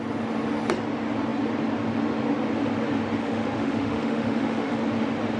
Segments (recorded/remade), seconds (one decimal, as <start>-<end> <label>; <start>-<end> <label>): 0.0-3.2 recorded; 3.2-4.8 remade; 4.8-5.4 recorded